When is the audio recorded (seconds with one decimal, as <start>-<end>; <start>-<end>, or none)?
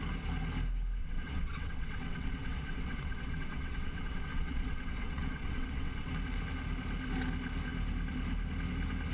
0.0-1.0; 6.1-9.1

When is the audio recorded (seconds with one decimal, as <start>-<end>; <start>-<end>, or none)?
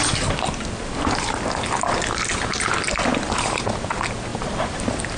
0.0-5.2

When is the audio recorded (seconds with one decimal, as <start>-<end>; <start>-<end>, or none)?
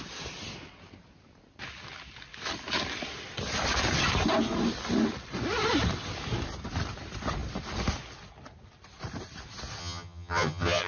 0.0-9.8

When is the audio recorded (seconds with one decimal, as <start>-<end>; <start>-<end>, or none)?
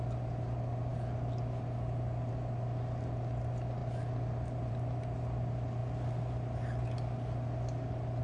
0.0-3.8; 4.7-8.2